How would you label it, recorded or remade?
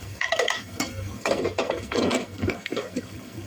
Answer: remade